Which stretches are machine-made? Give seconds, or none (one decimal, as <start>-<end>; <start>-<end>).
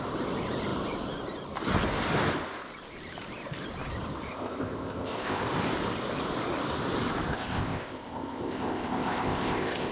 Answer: 4.3-5.4; 7.3-9.9